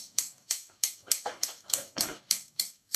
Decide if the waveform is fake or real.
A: fake